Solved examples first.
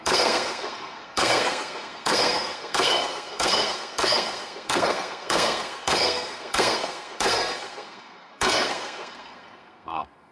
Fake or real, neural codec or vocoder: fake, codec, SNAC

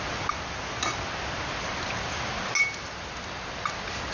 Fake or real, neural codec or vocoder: real